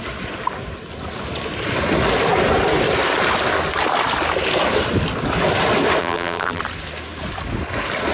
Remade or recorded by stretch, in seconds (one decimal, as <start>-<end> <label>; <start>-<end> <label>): 0.0-6.0 recorded; 6.0-6.6 remade; 6.6-8.1 recorded